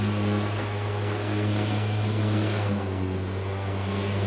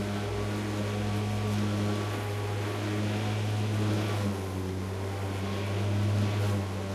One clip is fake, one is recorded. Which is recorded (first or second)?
second